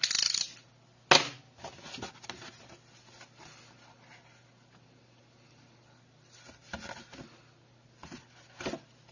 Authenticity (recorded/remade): recorded